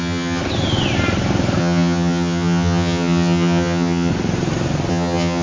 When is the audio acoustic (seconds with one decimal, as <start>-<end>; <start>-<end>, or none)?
0.4-1.6; 4.1-4.9